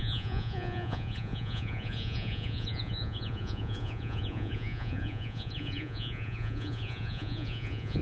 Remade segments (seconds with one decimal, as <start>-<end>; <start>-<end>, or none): 0.0-8.0